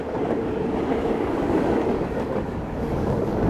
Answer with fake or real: fake